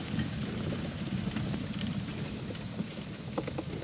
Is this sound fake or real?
real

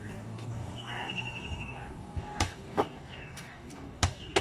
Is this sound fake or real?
fake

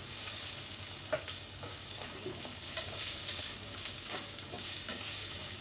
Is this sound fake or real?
fake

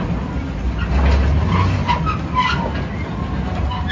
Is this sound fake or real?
real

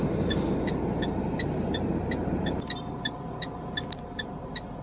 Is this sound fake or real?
real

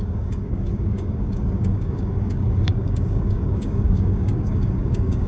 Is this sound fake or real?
fake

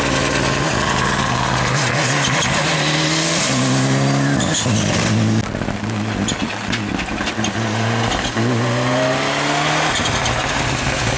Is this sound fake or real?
real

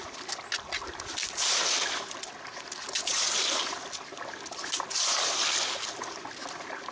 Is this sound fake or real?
real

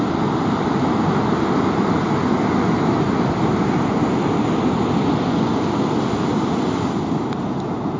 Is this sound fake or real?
real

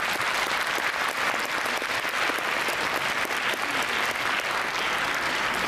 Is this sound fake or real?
real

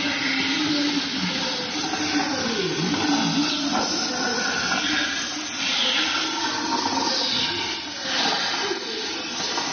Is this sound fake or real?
real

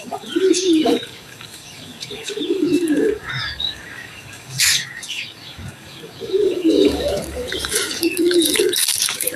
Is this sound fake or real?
fake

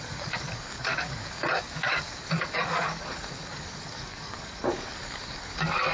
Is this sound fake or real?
fake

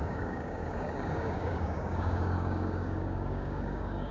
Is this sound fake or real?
fake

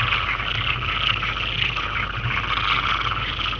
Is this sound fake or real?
real